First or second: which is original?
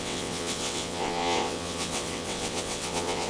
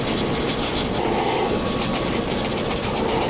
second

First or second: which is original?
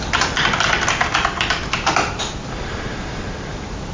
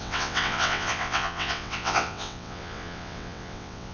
first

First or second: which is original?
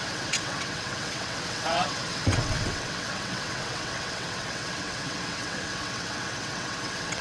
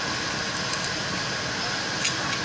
second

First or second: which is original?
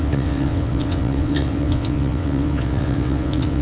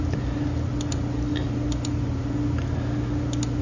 second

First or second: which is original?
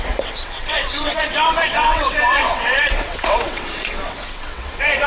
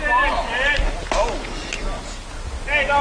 second